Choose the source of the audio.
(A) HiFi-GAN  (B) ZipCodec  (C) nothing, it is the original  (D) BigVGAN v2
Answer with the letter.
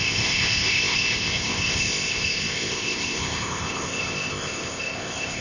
B